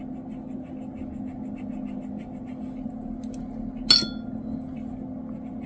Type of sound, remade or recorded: recorded